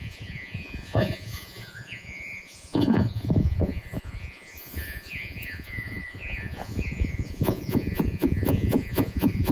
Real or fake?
fake